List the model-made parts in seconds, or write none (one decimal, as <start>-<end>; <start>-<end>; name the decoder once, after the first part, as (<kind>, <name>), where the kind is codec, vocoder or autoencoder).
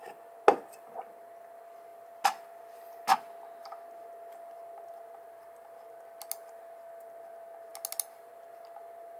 none